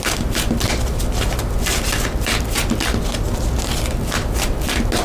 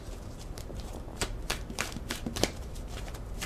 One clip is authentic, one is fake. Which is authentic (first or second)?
first